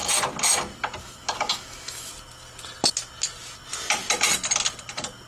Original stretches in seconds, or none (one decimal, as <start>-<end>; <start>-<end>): 0.0-1.0; 2.1-5.3